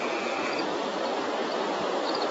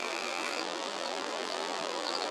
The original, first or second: first